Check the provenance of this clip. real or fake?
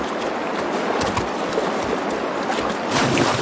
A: real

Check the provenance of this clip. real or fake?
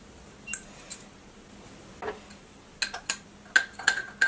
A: real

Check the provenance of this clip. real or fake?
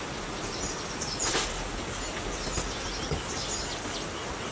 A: real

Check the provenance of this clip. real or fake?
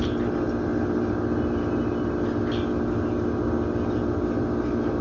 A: real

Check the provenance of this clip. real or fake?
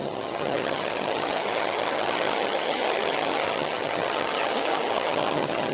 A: fake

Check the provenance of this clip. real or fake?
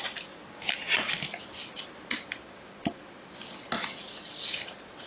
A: real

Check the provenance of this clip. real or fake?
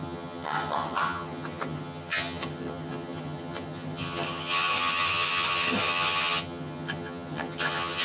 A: fake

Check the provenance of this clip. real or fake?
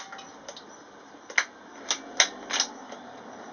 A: real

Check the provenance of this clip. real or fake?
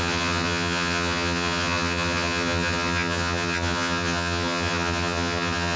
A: fake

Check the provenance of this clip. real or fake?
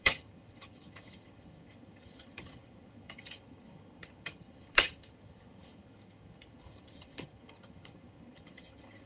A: fake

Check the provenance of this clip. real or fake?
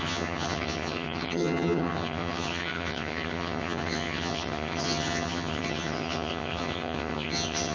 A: fake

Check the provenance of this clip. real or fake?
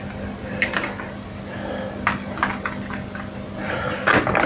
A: real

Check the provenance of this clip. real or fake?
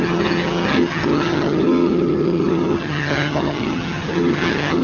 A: fake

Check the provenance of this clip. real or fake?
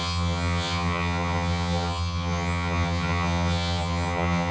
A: fake